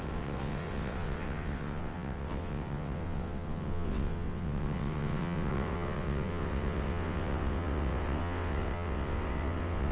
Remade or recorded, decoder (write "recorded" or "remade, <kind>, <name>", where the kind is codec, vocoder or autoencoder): remade, vocoder, WaveNeXt